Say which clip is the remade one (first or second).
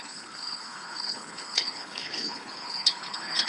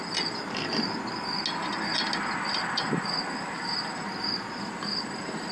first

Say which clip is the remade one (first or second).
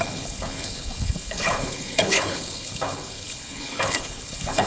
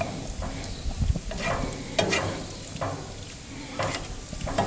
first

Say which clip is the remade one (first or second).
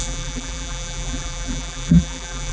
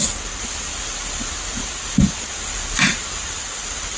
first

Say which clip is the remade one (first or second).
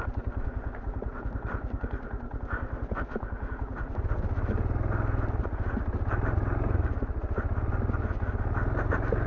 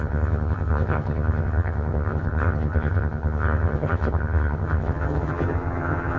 second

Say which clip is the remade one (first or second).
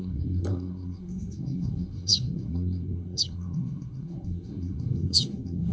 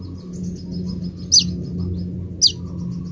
first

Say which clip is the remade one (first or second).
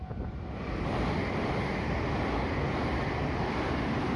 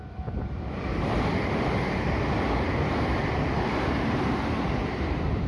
second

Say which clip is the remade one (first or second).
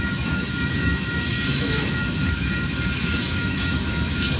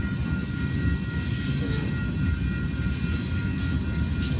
first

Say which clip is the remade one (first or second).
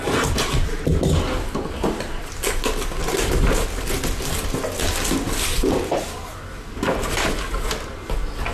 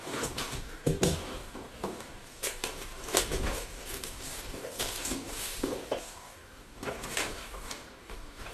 second